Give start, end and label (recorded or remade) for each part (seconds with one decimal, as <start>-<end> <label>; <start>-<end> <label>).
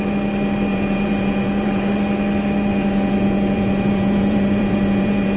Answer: 0.0-0.7 recorded; 0.7-1.9 remade; 1.9-2.7 recorded; 2.7-5.4 remade